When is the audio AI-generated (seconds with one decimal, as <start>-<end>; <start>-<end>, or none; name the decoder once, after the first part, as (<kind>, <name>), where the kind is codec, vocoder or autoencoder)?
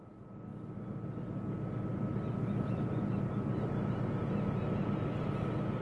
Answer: none